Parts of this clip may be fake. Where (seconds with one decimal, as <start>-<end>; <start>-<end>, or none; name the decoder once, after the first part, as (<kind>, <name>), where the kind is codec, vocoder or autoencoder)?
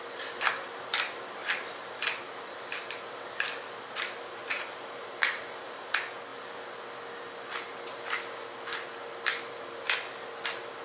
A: 4.4-5.8 (vocoder, BigVGAN v2)